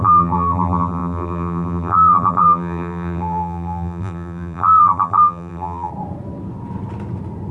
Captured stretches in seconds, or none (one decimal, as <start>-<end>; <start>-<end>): 5.9-7.5